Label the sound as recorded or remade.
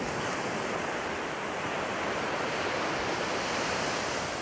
recorded